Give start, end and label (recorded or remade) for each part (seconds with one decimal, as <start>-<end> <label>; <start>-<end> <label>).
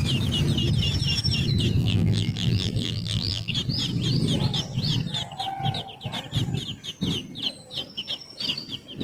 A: 0.0-1.8 recorded; 1.8-3.5 remade; 3.5-9.0 recorded